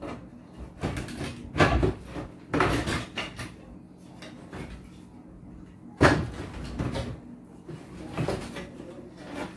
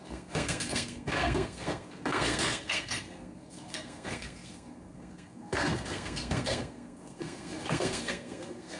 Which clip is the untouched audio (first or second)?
first